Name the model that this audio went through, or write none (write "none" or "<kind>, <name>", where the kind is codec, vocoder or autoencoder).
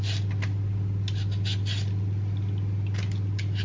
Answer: none